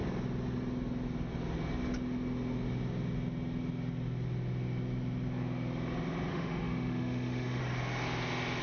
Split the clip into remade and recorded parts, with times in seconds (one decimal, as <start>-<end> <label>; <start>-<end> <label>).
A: 0.0-6.3 recorded; 6.3-7.6 remade; 7.6-8.6 recorded

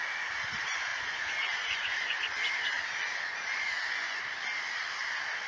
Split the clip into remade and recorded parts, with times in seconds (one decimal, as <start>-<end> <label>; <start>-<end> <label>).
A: 0.0-0.9 recorded; 0.9-4.2 remade; 4.2-5.5 recorded

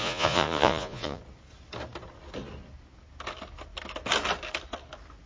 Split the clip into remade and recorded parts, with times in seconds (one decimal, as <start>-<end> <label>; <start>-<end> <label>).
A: 0.0-1.2 remade; 1.2-5.3 recorded

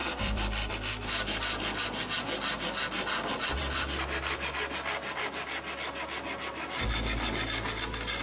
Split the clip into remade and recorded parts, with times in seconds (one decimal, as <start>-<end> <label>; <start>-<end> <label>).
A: 0.0-0.7 remade; 0.7-3.6 recorded; 3.6-5.2 remade; 5.2-8.2 recorded

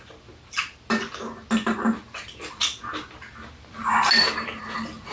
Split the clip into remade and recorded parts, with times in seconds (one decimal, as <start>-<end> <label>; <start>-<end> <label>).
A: 0.0-5.1 recorded

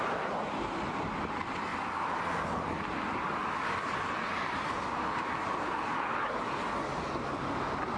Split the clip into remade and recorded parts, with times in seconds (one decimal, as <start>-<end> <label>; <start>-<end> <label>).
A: 0.0-8.0 recorded

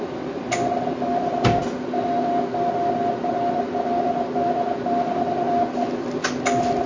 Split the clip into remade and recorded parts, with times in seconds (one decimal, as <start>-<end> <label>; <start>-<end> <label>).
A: 0.0-6.9 recorded

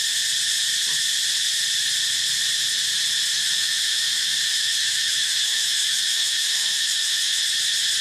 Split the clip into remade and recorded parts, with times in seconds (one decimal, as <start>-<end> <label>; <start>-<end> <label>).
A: 0.0-3.3 recorded; 3.3-7.4 remade; 7.4-8.0 recorded